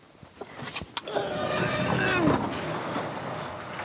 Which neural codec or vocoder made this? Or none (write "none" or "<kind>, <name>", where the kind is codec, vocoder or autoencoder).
none